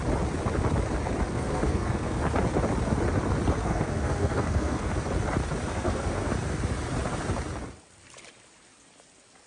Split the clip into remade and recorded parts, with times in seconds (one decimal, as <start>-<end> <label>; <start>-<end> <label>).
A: 0.0-1.3 recorded; 1.3-2.2 remade; 2.2-3.6 recorded; 3.6-4.9 remade; 4.9-5.7 recorded; 5.7-6.3 remade; 6.3-9.5 recorded